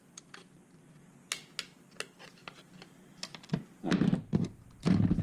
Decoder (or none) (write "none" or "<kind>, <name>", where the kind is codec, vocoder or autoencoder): none